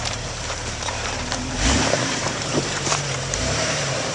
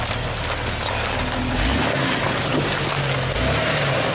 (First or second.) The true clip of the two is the second